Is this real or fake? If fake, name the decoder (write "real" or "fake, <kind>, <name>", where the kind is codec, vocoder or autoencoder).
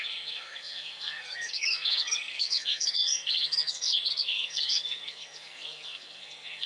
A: fake, codec, SNAC